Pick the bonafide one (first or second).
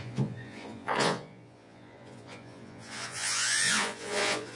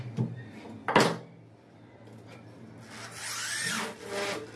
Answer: second